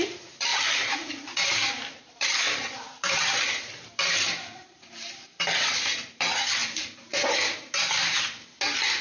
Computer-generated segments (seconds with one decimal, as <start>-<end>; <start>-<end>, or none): 0.5-5.7; 6.6-8.6